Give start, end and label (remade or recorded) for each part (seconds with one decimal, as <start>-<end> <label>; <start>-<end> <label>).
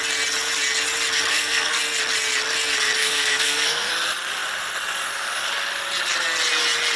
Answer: 0.0-1.3 recorded; 1.3-1.8 remade; 1.8-3.0 recorded; 3.0-3.9 remade; 3.9-7.0 recorded